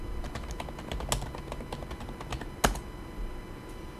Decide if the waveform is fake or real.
real